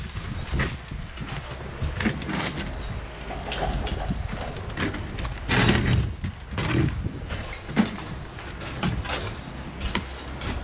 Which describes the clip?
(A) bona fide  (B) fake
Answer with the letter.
A